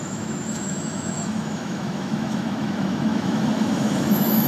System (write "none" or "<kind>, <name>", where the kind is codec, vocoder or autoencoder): autoencoder, DAC-VAE